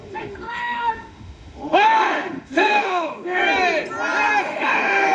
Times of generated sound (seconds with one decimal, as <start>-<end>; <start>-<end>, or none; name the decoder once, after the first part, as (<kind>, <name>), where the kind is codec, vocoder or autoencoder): 0.0-3.4 (autoencoder, DAC-VAE); 4.4-5.1